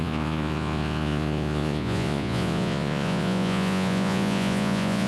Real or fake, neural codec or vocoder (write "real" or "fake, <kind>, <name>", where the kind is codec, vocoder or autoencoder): fake, vocoder, Vocos